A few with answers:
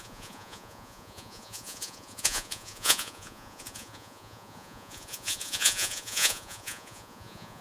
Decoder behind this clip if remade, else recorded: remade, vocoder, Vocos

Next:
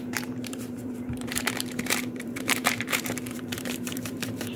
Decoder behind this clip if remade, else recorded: remade, vocoder, BigVGAN v2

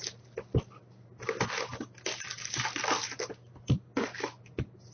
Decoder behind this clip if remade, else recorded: recorded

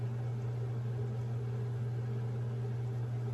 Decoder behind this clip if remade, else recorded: recorded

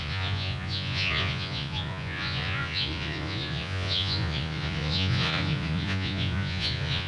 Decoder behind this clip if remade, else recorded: remade, vocoder, Vocos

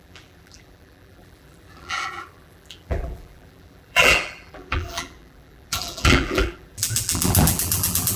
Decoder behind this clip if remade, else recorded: remade, vocoder, BigVGAN v2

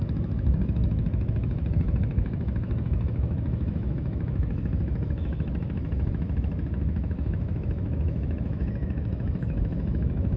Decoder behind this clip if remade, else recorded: remade, autoencoder, DAC-VAE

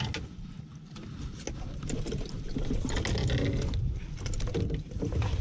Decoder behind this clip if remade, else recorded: recorded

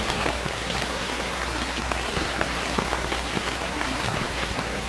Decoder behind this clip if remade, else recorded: remade, codec, SNAC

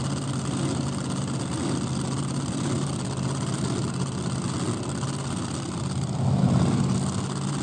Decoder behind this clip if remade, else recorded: recorded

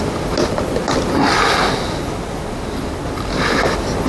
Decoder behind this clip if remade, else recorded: recorded